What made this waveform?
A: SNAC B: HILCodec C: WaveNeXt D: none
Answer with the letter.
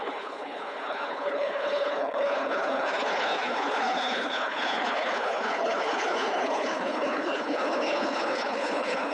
B